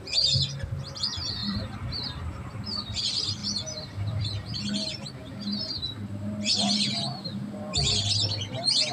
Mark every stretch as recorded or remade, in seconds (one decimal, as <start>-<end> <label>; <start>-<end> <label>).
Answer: 0.0-1.4 recorded; 1.4-3.0 remade; 3.0-3.4 recorded; 3.4-4.2 remade; 4.2-5.3 recorded; 5.3-7.9 remade; 7.9-8.9 recorded